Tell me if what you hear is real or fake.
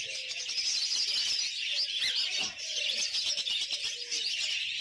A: real